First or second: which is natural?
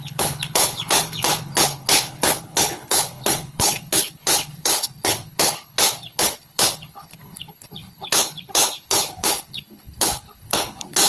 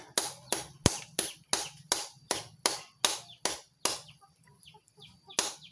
second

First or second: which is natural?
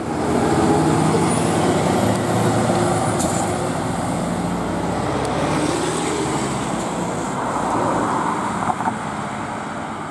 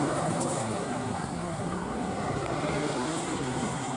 first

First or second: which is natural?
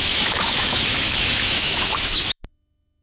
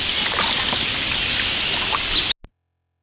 second